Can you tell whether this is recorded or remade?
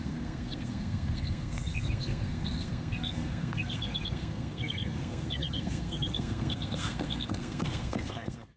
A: remade